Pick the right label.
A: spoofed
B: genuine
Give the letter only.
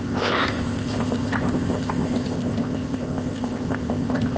A